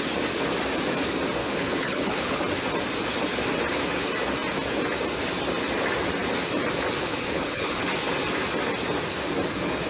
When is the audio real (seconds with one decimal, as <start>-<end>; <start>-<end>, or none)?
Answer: 0.0-1.4; 2.4-7.0; 7.8-9.9

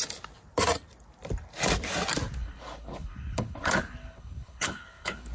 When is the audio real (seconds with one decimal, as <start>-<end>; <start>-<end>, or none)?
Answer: 0.0-2.4

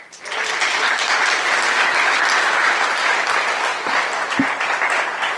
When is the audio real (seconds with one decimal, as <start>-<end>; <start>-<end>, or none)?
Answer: 0.0-5.4

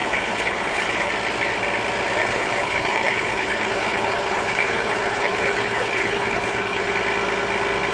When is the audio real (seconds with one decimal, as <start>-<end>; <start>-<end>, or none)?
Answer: 1.1-2.2; 6.9-7.9

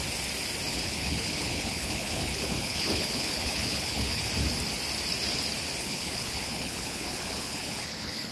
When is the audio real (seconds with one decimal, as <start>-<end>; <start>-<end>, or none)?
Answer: 0.0-0.7; 4.2-5.8

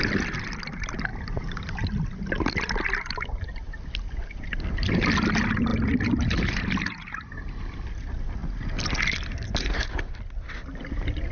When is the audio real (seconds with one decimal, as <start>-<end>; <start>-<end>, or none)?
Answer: 0.0-11.3

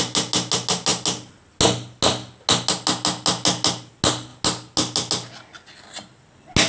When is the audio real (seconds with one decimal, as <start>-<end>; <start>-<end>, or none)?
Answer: 0.0-6.7

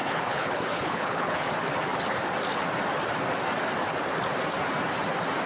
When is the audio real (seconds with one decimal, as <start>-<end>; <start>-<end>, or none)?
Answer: 1.5-5.5